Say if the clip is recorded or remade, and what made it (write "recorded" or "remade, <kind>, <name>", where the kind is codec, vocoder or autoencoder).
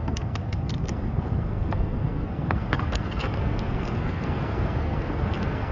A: remade, codec, SNAC